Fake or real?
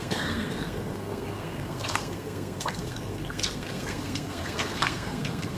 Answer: fake